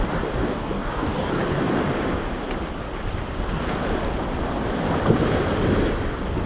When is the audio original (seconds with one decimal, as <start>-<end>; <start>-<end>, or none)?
0.0-0.4; 1.3-6.5